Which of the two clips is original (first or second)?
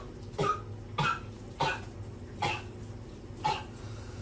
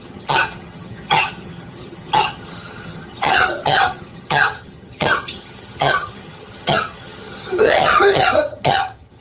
first